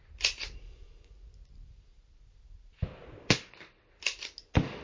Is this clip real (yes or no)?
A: yes